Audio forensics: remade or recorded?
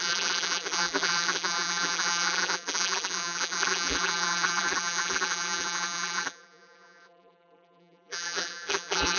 remade